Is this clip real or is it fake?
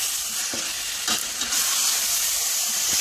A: fake